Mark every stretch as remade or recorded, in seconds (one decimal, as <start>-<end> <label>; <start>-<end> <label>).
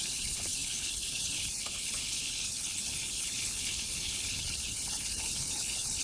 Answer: 0.0-6.0 remade